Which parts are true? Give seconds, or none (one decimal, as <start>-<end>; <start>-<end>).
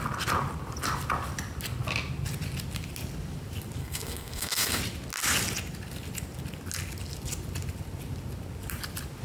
0.0-3.8; 4.8-9.2